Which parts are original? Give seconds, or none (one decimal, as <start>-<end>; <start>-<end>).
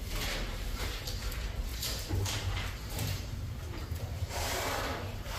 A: 0.0-1.7; 4.3-5.4